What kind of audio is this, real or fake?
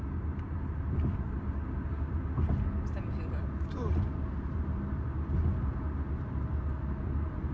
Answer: real